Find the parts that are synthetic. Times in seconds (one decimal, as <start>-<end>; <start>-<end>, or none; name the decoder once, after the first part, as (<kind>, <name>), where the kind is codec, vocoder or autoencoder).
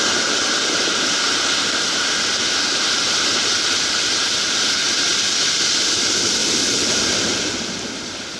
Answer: 5.1-6.0 (vocoder, BigVGAN v2); 6.4-7.9